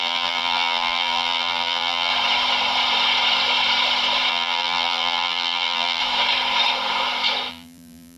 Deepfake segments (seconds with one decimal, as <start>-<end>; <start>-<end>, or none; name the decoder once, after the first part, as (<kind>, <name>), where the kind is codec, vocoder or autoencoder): 0.0-2.1 (vocoder, BigVGAN v2); 4.3-6.0; 7.5-8.2